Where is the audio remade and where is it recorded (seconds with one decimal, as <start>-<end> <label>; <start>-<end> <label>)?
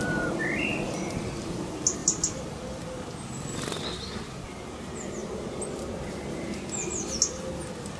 0.0-8.0 recorded